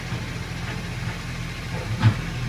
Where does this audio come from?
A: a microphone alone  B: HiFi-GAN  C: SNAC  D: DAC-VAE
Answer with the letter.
A